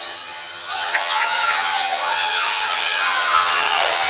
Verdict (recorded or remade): remade